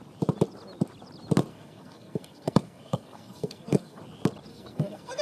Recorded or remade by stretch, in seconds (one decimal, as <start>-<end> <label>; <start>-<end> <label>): 0.0-1.5 recorded; 1.5-4.0 remade; 4.0-4.5 recorded; 4.5-5.2 remade